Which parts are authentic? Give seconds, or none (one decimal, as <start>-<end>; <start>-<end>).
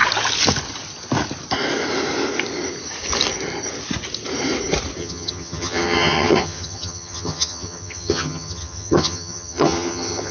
0.0-5.0